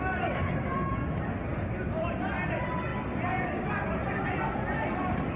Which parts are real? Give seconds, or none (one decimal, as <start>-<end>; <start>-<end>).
0.0-5.4